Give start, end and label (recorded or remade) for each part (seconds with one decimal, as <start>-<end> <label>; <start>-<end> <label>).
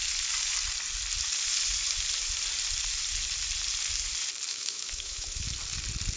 0.0-4.5 recorded; 4.5-5.4 remade; 5.4-6.2 recorded